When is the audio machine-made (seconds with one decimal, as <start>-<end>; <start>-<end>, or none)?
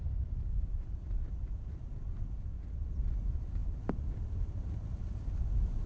none